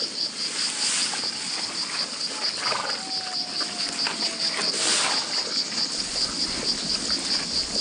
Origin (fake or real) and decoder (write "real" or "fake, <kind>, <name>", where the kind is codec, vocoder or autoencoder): real